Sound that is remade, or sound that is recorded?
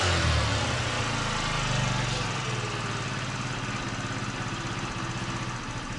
recorded